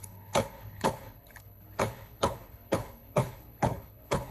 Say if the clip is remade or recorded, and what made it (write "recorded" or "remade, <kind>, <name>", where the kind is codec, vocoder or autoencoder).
remade, codec, HILCodec